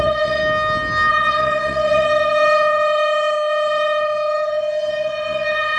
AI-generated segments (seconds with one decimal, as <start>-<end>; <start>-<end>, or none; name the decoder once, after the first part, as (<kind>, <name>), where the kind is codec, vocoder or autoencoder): 0.0-0.4 (vocoder, WaveNeXt); 1.1-5.8